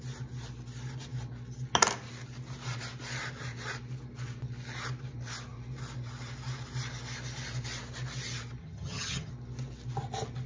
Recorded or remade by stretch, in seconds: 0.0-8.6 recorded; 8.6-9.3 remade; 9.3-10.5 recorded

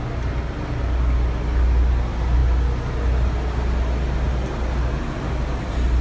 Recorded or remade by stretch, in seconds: 0.0-6.0 recorded

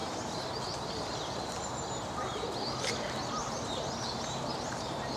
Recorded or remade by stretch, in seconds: 0.0-0.6 remade; 0.6-3.4 recorded; 3.4-5.2 remade

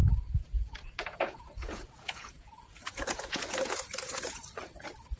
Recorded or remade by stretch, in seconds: 0.0-4.4 remade; 4.4-5.2 recorded

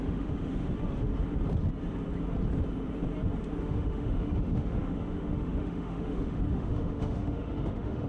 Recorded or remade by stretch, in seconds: 0.0-1.1 remade; 1.1-3.6 recorded; 3.6-8.1 remade

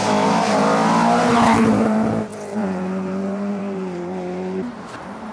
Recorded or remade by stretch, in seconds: 0.0-1.3 recorded; 1.3-5.3 remade